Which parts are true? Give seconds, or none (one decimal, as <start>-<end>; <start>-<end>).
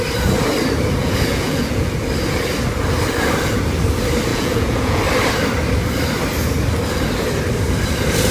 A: 0.0-1.0; 1.9-4.3; 5.0-8.3